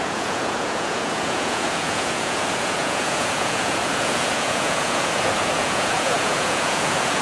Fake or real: fake